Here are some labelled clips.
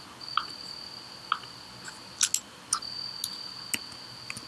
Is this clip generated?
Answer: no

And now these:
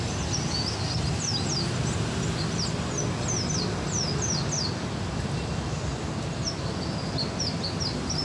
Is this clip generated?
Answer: no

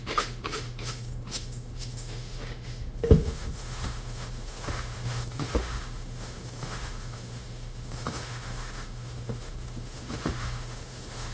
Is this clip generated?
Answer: yes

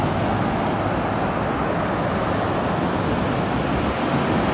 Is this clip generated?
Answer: no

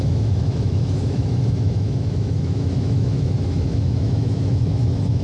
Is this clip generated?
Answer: yes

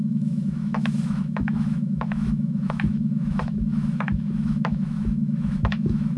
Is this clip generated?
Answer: yes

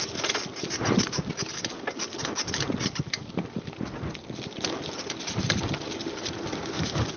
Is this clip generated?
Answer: no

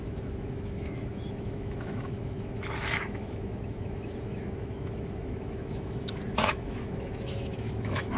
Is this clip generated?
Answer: yes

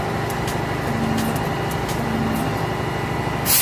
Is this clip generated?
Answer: no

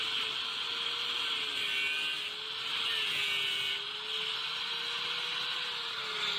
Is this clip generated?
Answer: no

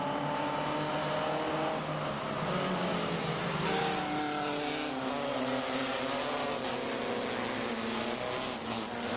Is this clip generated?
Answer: no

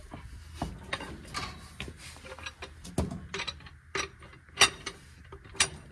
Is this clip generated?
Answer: no